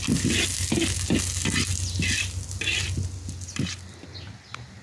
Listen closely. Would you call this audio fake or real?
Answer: real